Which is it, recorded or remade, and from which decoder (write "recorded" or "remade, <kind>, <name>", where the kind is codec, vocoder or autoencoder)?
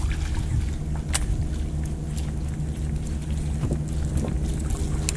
recorded